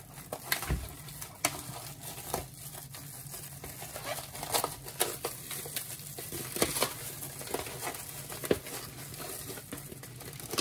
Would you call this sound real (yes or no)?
yes